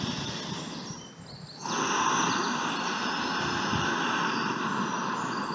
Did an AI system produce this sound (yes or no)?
yes